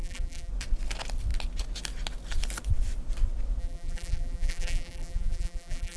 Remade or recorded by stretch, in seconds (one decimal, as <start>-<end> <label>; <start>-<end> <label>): 0.0-0.5 remade; 0.5-3.6 recorded; 3.6-6.0 remade